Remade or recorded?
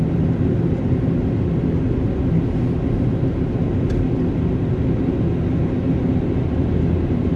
recorded